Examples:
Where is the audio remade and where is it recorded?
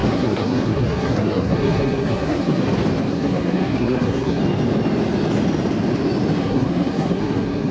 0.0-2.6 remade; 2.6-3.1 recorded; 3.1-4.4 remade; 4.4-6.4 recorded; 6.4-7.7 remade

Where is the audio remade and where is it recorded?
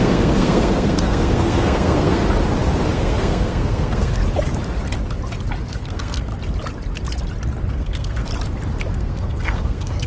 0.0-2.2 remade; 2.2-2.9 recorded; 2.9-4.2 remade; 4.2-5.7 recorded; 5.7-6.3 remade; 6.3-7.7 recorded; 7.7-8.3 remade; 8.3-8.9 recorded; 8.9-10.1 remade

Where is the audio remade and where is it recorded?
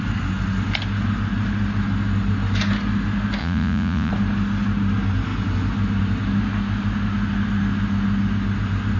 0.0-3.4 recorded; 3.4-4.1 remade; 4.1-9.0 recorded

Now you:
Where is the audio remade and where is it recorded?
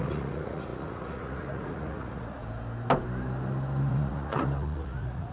0.0-2.4 remade; 2.4-3.9 recorded; 3.9-5.3 remade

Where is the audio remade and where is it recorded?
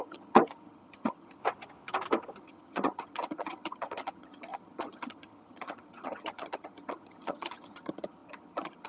0.0-1.4 remade; 1.4-2.4 recorded; 2.4-8.9 remade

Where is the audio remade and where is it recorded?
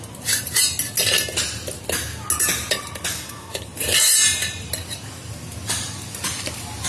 0.0-3.1 recorded; 3.1-3.6 remade; 3.6-6.9 recorded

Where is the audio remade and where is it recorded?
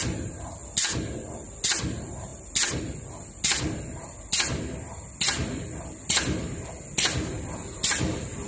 0.0-8.5 recorded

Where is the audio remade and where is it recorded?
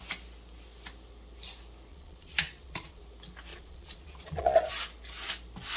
0.0-1.9 recorded; 1.9-3.0 remade; 3.0-3.5 recorded; 3.5-4.7 remade; 4.7-5.8 recorded